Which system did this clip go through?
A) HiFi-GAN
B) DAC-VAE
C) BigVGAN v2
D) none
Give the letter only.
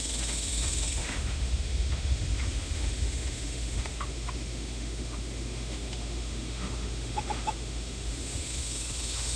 B